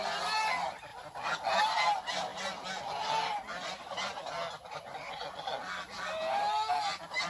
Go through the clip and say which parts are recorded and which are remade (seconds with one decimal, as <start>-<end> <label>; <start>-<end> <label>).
0.0-7.3 recorded